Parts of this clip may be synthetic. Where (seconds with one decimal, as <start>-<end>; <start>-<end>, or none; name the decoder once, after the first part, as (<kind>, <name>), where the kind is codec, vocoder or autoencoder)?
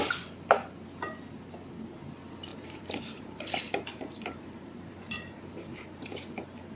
2.5-6.7 (vocoder, BigVGAN v2)